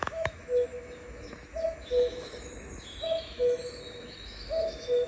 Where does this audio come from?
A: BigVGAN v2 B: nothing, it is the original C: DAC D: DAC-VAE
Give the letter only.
D